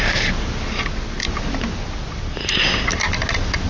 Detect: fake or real real